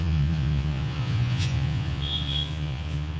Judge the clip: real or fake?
fake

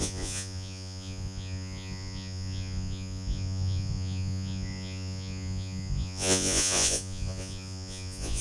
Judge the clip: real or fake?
fake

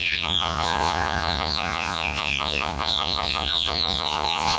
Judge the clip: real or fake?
fake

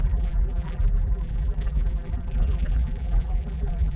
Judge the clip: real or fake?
fake